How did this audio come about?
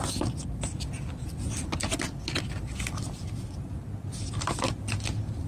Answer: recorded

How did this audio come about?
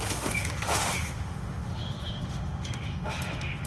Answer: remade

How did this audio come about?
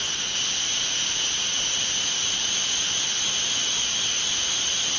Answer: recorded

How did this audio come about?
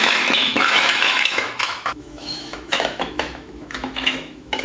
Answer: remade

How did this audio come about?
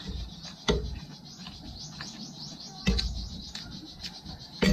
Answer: remade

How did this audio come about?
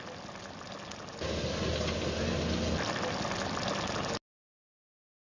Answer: recorded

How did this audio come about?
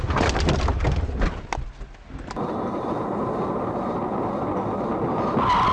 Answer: recorded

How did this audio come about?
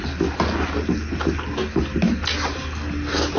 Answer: recorded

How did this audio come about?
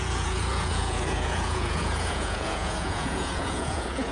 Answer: remade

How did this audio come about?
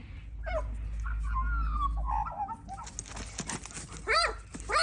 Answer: recorded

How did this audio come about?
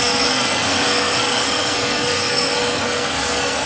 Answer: remade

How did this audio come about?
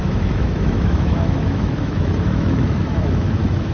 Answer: remade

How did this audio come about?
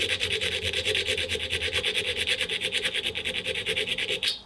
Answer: recorded